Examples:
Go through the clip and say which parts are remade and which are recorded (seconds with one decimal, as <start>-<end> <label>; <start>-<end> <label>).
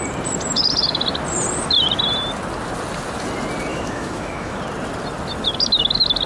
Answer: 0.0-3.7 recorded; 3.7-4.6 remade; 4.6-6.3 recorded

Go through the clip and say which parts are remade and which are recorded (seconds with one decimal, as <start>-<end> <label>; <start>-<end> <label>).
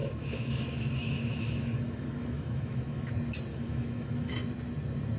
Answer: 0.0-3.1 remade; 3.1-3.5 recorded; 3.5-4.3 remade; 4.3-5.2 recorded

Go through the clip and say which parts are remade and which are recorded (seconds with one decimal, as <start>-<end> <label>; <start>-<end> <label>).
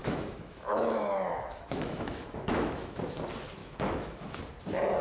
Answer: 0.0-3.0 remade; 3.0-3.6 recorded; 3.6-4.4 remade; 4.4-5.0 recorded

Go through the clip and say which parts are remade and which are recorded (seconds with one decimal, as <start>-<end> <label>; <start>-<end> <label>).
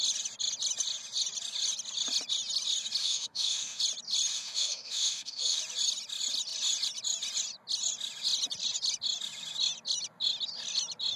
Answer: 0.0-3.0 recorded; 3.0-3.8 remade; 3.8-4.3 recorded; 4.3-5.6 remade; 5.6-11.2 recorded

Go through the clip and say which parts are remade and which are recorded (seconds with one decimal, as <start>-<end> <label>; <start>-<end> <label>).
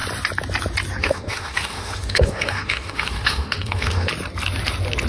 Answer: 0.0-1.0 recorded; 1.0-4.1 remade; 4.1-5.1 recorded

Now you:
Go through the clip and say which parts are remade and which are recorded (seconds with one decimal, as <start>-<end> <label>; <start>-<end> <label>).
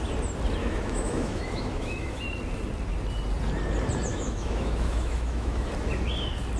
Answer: 0.0-0.6 recorded; 0.6-2.2 remade; 2.2-4.1 recorded; 4.1-5.7 remade; 5.7-6.6 recorded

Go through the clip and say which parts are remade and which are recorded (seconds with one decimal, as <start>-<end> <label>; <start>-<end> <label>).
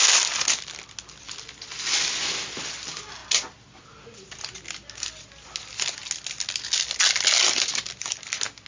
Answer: 0.0-8.7 recorded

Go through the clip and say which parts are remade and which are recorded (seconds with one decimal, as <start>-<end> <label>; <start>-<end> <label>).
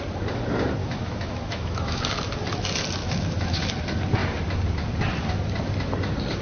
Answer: 0.0-0.8 recorded; 0.8-2.0 remade; 2.0-3.0 recorded; 3.0-3.7 remade; 3.7-6.4 recorded